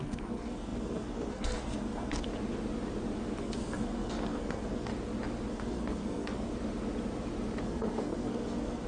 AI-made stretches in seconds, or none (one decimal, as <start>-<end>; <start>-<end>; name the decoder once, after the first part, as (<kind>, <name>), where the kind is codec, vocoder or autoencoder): 0.0-2.3 (codec, SNAC); 3.4-4.9; 5.5-6.5; 7.6-8.9